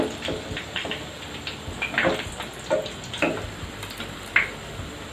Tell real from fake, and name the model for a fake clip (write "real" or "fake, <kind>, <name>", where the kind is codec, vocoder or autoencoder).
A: real